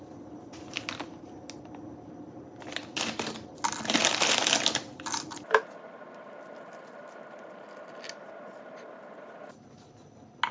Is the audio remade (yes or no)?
no